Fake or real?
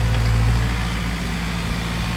real